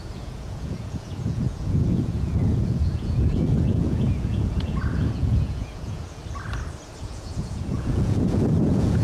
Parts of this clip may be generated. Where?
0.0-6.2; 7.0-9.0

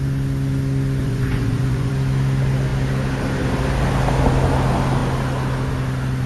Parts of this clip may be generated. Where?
1.0-1.9

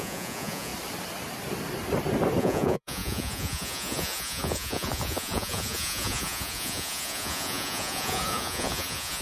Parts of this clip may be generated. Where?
0.0-0.7; 2.4-9.2

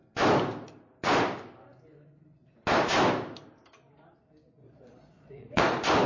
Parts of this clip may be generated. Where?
4.6-5.6